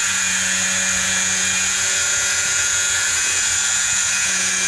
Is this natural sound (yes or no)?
no